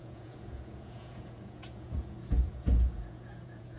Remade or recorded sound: remade